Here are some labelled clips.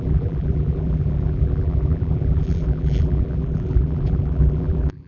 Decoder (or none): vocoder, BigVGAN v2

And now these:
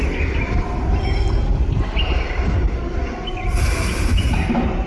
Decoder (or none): none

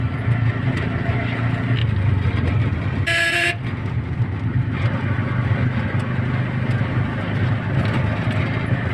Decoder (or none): none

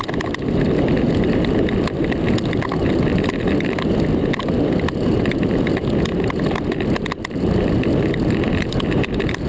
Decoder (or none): none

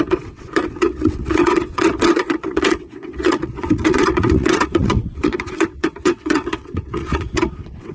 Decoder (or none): vocoder, WaveNeXt